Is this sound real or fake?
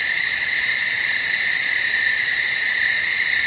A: fake